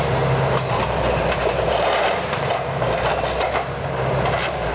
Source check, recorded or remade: remade